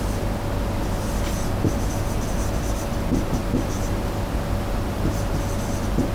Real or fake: real